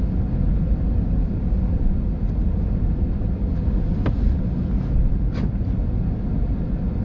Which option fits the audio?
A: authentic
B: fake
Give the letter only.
A